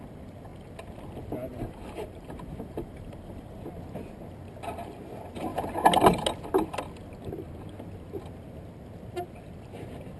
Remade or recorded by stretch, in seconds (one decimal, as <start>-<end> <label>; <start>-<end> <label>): 0.0-1.5 recorded; 1.5-3.6 remade; 3.6-10.2 recorded